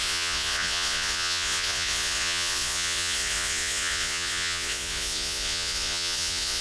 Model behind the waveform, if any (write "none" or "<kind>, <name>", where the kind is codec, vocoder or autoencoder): vocoder, Vocos